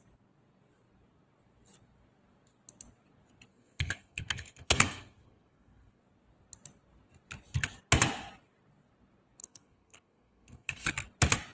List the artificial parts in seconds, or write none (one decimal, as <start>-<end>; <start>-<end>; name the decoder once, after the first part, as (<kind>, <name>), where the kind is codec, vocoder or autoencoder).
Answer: 3.5-6.0 (codec, SNAC); 9.4-10.9

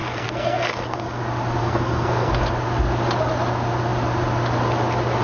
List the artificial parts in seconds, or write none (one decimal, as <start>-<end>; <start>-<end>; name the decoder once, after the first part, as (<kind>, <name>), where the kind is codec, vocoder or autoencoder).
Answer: 0.0-1.2 (codec, SNAC); 1.6-2.4

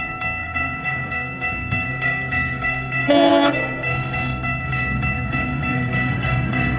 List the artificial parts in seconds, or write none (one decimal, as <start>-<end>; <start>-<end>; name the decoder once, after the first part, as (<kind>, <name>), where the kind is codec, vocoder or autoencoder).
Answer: 0.0-6.8 (codec, SNAC)

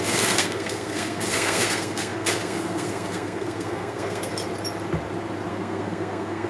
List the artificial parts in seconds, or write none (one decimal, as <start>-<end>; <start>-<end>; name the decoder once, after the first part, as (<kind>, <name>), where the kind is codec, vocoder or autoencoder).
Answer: 0.0-4.3 (codec, SNAC); 5.5-6.5

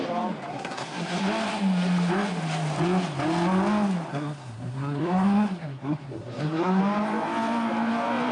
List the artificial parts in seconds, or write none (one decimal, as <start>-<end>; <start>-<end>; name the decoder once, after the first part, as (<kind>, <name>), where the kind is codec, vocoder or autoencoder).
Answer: 0.5-1.2 (codec, SNAC); 4.1-6.8